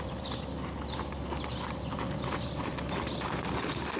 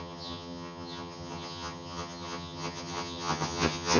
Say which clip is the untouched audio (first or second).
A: first